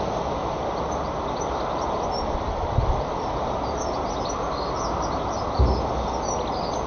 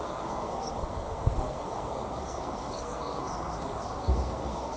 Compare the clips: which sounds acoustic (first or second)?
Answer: first